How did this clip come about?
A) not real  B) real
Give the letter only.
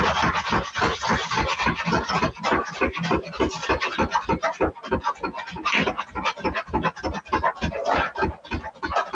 B